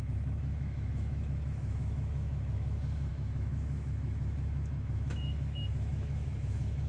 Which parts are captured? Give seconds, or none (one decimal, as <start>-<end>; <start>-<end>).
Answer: none